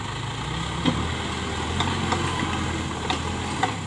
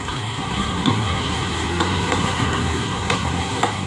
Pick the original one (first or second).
first